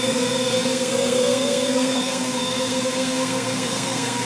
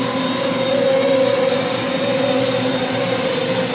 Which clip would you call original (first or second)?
second